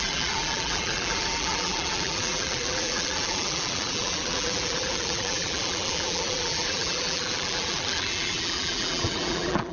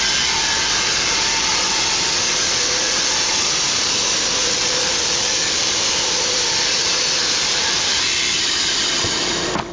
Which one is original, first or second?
second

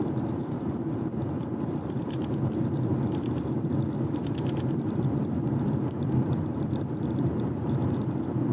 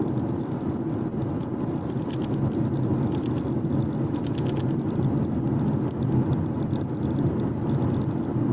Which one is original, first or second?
second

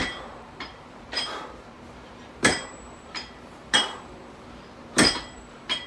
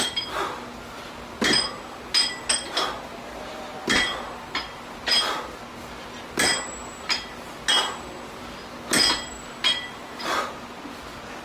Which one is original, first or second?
second